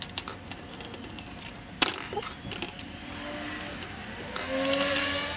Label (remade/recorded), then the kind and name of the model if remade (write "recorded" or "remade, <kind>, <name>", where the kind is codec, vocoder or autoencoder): recorded